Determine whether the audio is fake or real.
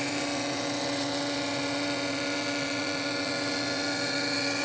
fake